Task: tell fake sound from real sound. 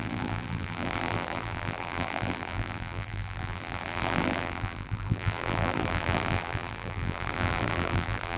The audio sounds fake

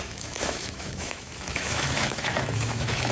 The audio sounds fake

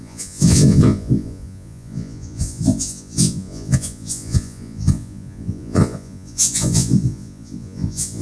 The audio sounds fake